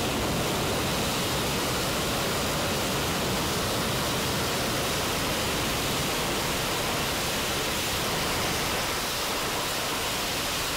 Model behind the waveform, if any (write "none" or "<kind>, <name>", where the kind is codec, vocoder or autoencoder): none